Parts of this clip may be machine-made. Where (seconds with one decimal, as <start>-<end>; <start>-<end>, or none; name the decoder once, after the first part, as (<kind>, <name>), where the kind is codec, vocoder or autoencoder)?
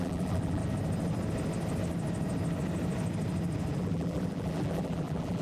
0.0-0.6 (vocoder, BigVGAN v2); 3.8-5.4